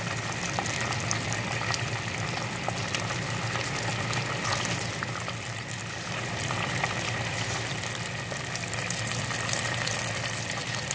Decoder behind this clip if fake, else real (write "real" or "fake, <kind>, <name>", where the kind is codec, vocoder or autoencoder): real